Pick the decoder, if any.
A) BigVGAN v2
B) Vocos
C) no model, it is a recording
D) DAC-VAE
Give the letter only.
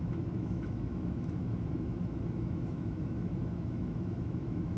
D